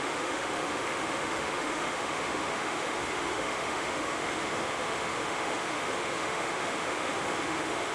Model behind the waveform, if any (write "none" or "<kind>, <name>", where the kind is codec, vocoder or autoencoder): autoencoder, DAC-VAE